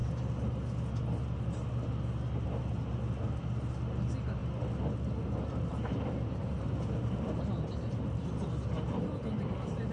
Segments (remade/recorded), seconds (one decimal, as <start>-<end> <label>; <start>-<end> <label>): 0.0-9.9 recorded